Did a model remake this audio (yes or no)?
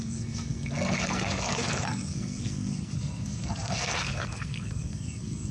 yes